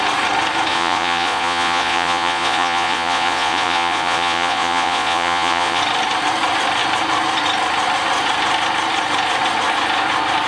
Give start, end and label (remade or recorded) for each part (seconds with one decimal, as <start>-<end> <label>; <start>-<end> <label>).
0.0-0.7 recorded; 0.7-5.8 remade; 5.8-10.5 recorded